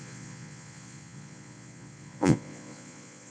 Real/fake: fake